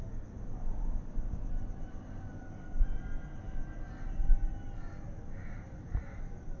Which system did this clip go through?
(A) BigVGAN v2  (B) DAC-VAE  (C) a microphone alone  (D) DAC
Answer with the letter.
C